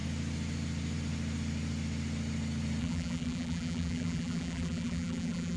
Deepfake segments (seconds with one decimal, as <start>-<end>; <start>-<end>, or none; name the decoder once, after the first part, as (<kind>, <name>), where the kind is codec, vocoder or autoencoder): 2.8-5.6 (vocoder, BigVGAN v2)